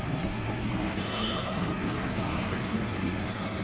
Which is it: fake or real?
fake